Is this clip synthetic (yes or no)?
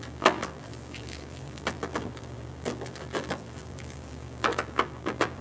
yes